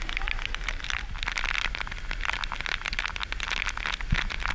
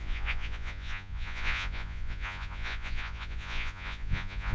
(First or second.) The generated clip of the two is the second